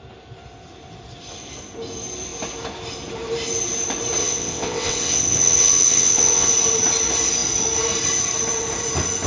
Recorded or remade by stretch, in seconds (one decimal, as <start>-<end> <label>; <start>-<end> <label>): 0.0-4.2 recorded; 4.2-6.5 remade; 6.5-9.3 recorded